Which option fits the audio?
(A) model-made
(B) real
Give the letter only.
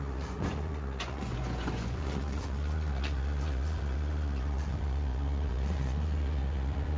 A